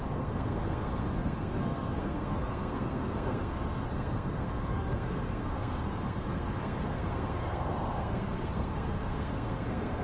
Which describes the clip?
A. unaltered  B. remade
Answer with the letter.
B